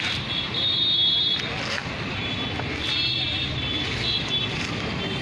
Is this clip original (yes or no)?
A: yes